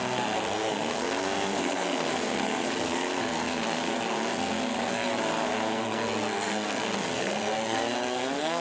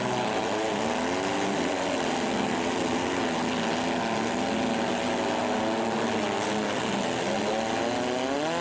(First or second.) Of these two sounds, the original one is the second